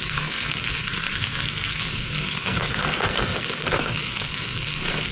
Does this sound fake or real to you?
fake